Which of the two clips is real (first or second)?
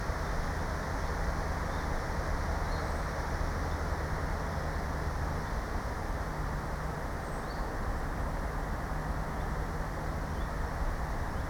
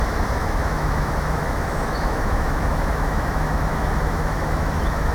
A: first